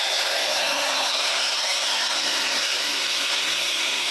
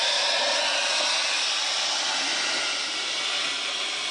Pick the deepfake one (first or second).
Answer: first